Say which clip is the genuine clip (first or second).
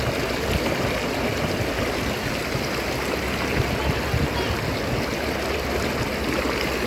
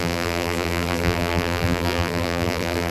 first